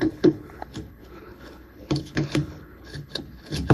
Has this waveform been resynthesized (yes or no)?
yes